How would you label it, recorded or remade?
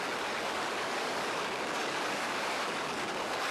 remade